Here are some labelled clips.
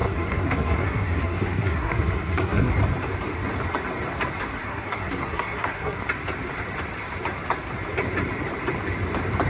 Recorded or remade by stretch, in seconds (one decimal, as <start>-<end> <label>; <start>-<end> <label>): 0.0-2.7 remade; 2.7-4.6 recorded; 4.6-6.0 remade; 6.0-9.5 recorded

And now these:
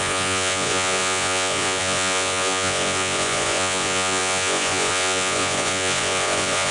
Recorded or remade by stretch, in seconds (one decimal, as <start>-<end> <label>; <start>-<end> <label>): 0.0-6.7 remade

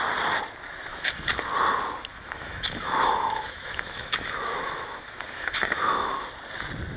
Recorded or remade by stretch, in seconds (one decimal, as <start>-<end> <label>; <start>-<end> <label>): 0.0-0.9 recorded; 0.9-1.4 remade; 1.4-2.1 recorded; 2.1-6.3 remade; 6.3-7.0 recorded

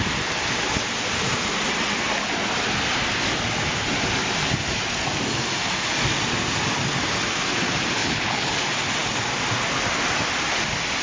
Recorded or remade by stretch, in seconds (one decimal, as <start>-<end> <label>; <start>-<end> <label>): 0.0-8.0 recorded; 8.0-8.5 remade; 8.5-11.0 recorded

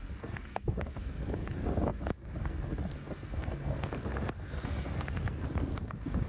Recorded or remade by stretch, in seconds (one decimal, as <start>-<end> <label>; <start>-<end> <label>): 0.0-6.3 remade

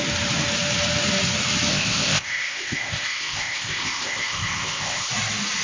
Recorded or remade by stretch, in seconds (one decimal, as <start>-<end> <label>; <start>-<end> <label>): 0.0-1.7 recorded; 1.7-5.1 remade; 5.1-5.6 recorded